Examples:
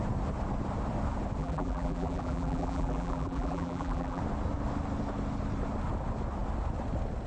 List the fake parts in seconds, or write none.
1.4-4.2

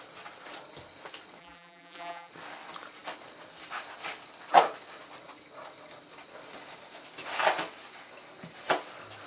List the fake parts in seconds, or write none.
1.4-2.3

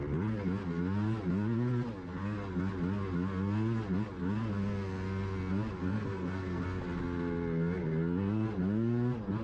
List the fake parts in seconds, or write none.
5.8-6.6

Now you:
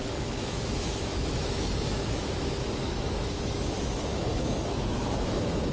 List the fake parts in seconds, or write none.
0.0-5.7

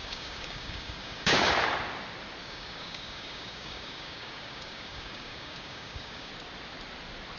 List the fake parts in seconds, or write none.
0.0-1.5; 2.4-6.3

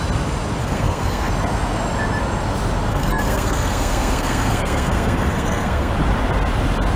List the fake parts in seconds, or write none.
0.6-1.3; 2.9-5.9